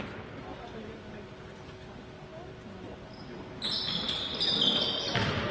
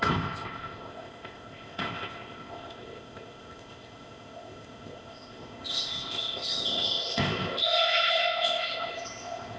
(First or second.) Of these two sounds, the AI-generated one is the second